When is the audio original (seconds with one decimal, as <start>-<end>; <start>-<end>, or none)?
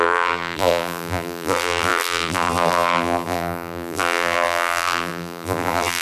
none